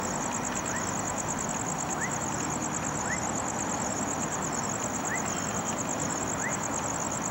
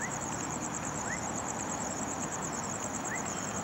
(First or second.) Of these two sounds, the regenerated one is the second